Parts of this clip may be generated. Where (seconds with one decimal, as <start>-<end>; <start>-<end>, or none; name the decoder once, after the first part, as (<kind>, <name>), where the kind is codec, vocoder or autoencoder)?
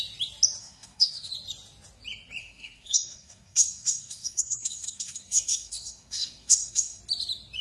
0.6-1.3 (codec, SNAC); 2.4-7.0